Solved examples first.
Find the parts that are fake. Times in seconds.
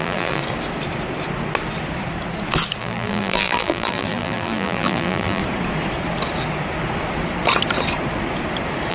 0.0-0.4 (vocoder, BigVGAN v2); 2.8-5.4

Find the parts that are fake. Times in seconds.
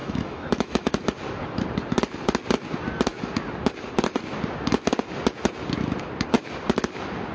0.0-0.9 (autoencoder, DAC-VAE)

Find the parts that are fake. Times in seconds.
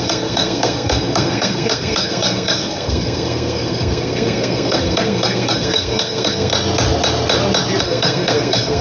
0.0-6.5 (codec, SNAC); 7.8-8.8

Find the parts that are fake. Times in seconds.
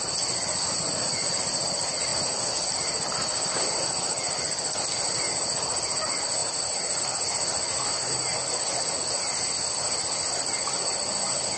none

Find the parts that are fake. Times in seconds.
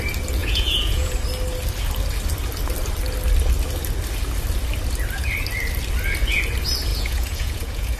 0.4-1.1 (vocoder, Vocos); 6.9-8.0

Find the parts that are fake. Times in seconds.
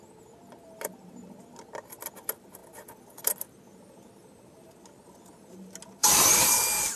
6.0-7.0 (vocoder, BigVGAN v2)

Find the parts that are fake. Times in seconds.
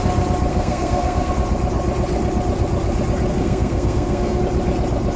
0.5-1.3 (codec, SNAC); 3.3-4.4